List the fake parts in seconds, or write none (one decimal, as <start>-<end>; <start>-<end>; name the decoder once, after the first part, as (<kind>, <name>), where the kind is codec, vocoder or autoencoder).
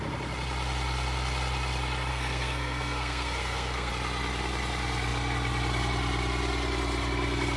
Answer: 2.1-3.9 (codec, SNAC)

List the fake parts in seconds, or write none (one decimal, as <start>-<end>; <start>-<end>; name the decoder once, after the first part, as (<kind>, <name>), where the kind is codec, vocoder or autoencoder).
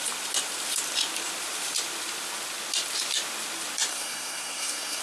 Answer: 3.9-5.0 (codec, SNAC)